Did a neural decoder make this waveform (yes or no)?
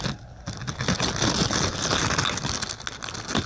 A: no